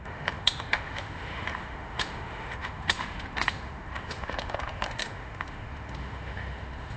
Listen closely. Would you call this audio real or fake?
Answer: fake